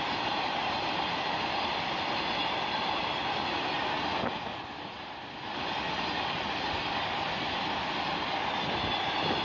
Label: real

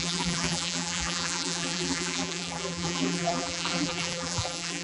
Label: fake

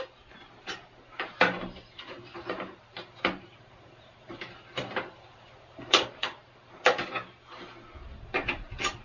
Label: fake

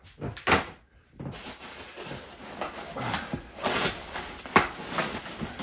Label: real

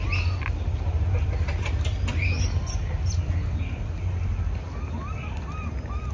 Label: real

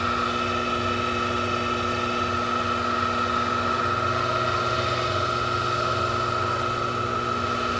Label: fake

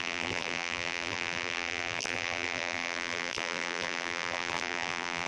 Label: fake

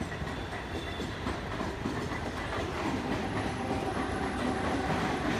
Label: fake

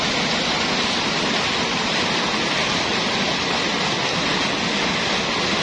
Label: real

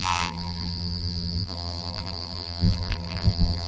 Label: fake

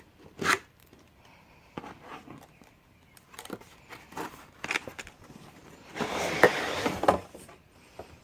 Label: fake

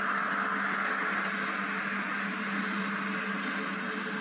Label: real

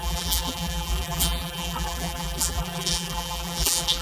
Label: fake